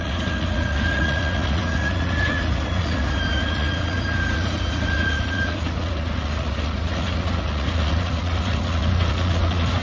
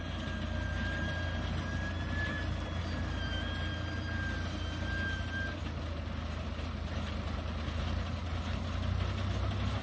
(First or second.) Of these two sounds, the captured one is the second